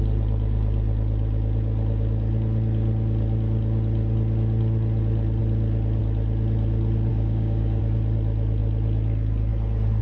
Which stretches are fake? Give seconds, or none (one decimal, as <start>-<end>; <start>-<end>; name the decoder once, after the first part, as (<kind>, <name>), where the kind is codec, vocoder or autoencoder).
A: 7.1-7.8 (codec, DAC)

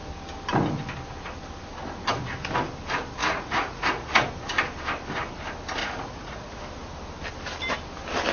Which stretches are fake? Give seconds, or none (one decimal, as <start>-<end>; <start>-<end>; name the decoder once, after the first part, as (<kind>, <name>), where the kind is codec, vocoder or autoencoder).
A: 3.2-4.3 (vocoder, Vocos); 5.8-6.6

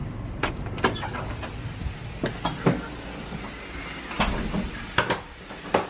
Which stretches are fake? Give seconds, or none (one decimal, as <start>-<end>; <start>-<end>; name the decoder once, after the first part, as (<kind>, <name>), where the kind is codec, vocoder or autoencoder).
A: none

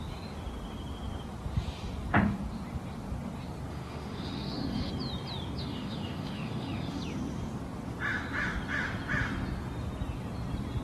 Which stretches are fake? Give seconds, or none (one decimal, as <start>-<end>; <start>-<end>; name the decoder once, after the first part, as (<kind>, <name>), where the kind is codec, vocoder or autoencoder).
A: 3.7-4.9 (autoencoder, DAC-VAE); 5.6-7.0

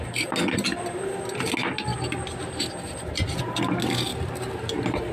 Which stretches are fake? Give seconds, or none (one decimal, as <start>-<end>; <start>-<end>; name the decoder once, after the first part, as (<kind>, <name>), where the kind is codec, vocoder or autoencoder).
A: 1.9-3.4 (vocoder, BigVGAN v2); 4.1-5.1

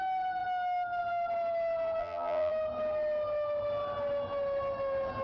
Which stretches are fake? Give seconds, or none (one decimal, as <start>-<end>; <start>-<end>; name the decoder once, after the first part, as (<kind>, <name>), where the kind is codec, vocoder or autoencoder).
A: 2.0-2.5 (vocoder, BigVGAN v2)

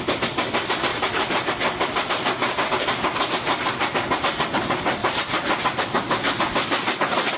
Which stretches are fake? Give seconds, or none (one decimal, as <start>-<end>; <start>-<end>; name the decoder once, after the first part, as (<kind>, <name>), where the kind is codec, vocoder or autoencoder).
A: 0.9-4.2 (vocoder, BigVGAN v2); 5.0-7.4